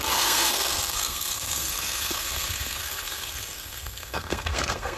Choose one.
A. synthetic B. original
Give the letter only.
A